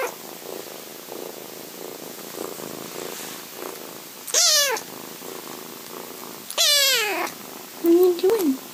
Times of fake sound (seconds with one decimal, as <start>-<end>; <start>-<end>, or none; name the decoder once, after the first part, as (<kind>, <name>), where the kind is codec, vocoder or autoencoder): 0.9-2.2 (vocoder, Vocos)